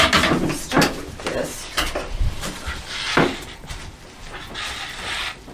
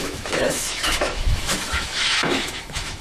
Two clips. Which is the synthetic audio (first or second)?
second